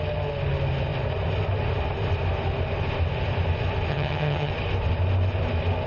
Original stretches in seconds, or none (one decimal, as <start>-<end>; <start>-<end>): 0.0-3.9; 4.5-5.9